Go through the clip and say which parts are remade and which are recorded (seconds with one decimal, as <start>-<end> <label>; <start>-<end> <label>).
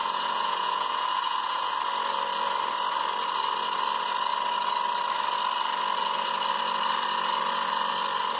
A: 0.0-1.7 remade; 1.7-8.4 recorded